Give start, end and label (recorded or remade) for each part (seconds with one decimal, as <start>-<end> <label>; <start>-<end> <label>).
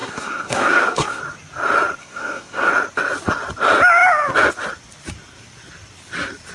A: 0.0-1.2 remade; 1.2-2.0 recorded; 2.0-2.7 remade; 2.7-6.5 recorded